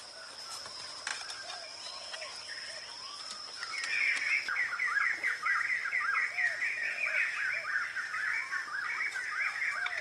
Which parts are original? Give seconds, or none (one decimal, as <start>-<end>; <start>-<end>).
0.0-10.0